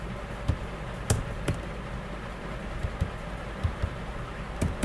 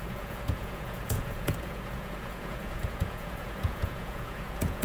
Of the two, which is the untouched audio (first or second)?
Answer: first